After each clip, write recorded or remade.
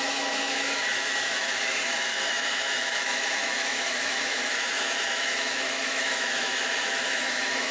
remade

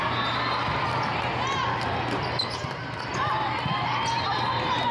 recorded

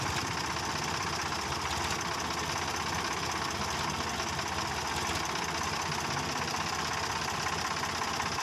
recorded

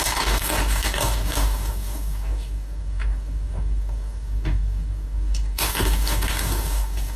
remade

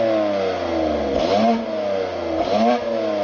recorded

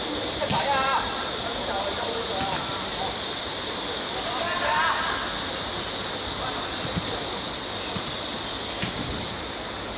recorded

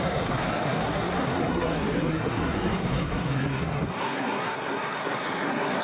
remade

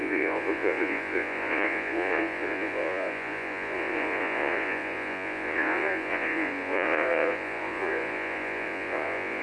remade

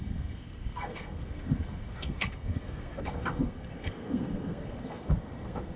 remade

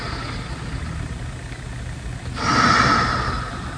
recorded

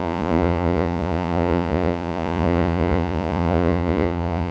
remade